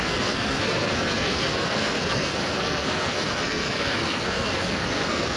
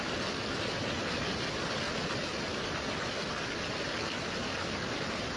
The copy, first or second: first